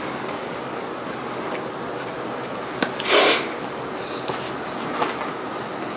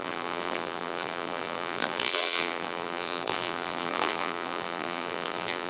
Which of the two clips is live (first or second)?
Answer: first